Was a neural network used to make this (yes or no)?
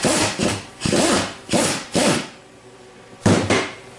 yes